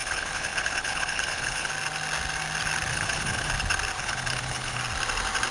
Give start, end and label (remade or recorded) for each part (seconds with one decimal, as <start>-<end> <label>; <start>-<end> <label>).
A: 0.0-1.7 remade; 1.7-2.9 recorded; 2.9-3.5 remade; 3.5-4.0 recorded; 4.0-4.8 remade; 4.8-5.5 recorded